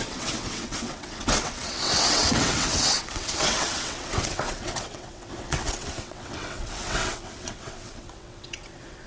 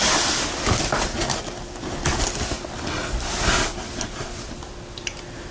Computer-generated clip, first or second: first